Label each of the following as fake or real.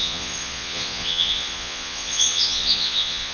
fake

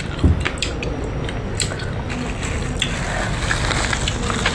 real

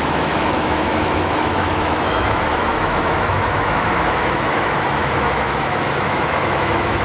fake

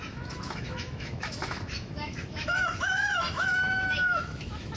fake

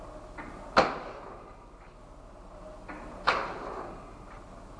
real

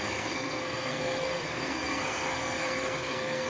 fake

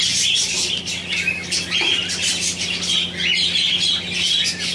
real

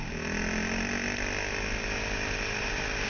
real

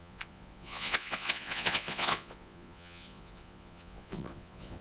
fake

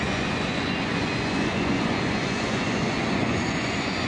fake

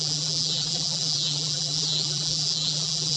fake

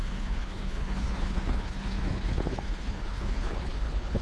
fake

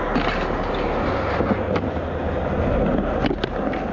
real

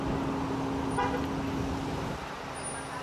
real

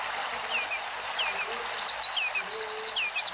real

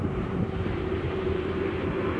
fake